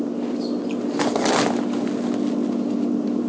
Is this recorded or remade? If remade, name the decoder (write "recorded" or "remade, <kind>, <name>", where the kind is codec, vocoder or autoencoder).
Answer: recorded